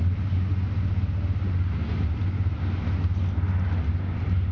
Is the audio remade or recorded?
recorded